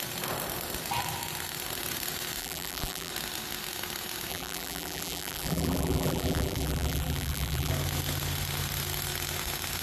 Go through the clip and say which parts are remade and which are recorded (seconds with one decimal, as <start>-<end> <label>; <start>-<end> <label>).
0.0-2.4 recorded; 2.4-3.1 remade; 3.1-4.3 recorded; 4.3-7.7 remade; 7.7-9.8 recorded